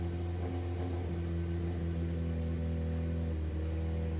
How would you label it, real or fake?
real